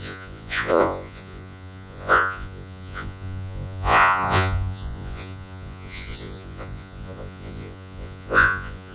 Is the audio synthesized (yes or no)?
yes